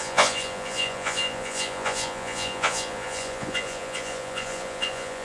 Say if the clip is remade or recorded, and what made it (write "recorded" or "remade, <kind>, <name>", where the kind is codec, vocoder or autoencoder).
remade, vocoder, Vocos